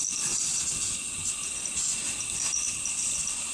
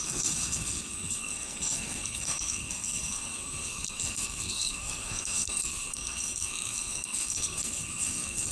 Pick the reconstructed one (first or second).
second